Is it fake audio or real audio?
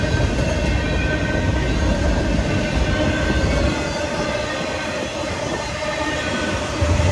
real